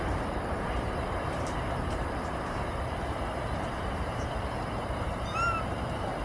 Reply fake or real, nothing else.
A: fake